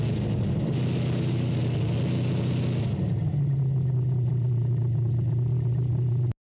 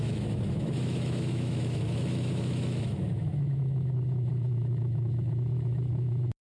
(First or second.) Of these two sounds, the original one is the first